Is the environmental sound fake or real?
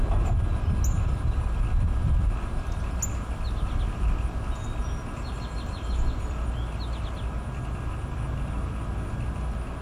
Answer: real